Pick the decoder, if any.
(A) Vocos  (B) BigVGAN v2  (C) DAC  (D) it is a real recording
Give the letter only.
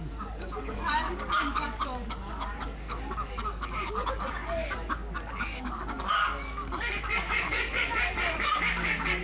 C